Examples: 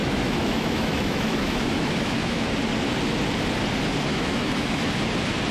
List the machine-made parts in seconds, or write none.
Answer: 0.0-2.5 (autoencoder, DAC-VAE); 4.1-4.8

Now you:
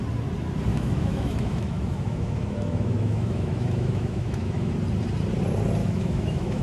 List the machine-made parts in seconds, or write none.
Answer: 0.7-4.7 (autoencoder, DAC-VAE); 5.8-6.6

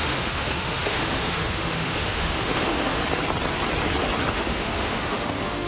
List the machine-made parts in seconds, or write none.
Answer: 0.0-3.0 (autoencoder, DAC-VAE); 4.3-5.7

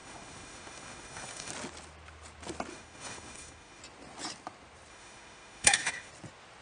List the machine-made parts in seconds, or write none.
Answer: 0.0-1.5 (autoencoder, DAC-VAE); 2.7-3.8; 4.9-6.1

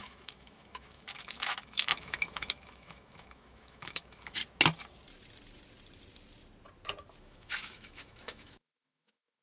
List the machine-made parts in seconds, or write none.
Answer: 0.0-4.4 (autoencoder, DAC-VAE); 7.2-9.4